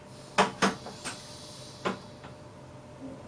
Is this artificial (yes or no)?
no